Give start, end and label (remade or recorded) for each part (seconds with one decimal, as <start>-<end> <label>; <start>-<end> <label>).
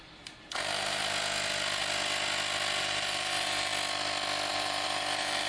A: 0.0-1.0 remade; 1.0-2.8 recorded; 2.8-3.7 remade; 3.7-4.5 recorded; 4.5-5.5 remade